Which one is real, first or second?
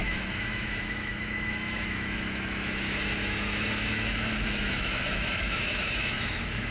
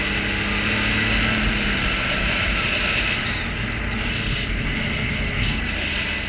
second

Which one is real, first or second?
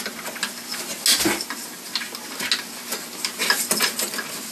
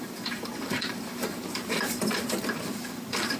first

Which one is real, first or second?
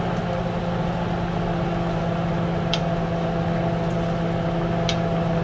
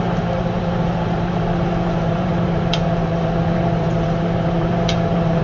first